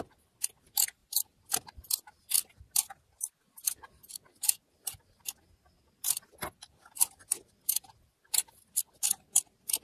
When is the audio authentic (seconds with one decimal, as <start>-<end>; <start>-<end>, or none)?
0.0-9.8